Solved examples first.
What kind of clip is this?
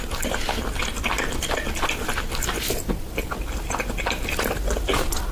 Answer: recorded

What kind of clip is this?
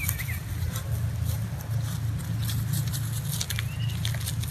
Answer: recorded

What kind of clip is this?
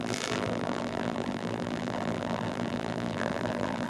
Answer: remade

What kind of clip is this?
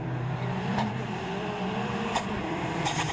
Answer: remade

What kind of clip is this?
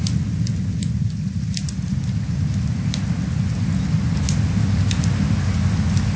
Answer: recorded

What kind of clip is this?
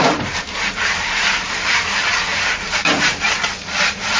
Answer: remade